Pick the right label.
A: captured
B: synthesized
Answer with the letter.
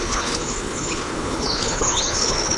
B